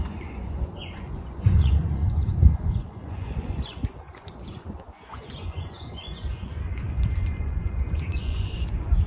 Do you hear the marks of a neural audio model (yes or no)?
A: yes